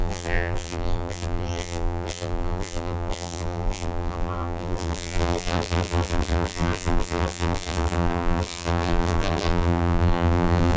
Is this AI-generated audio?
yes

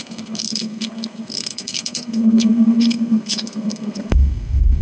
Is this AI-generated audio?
yes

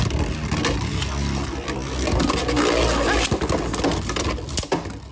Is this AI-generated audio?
no